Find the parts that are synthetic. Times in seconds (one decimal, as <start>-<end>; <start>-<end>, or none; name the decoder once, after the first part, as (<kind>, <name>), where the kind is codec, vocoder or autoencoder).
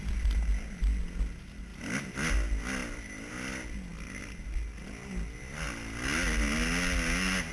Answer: none